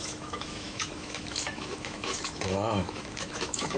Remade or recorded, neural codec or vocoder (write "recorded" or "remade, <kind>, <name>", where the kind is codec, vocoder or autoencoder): remade, autoencoder, DAC-VAE